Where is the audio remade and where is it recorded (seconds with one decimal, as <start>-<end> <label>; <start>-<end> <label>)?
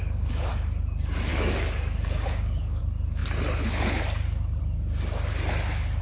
0.0-0.5 remade; 0.5-1.3 recorded; 1.3-2.8 remade; 2.8-6.0 recorded